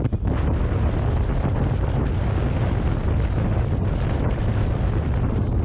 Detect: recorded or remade recorded